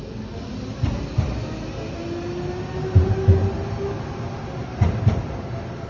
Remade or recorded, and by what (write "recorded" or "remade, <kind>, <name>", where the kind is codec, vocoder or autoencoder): recorded